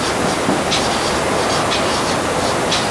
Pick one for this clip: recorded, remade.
recorded